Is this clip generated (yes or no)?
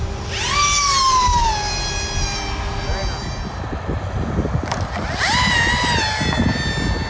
no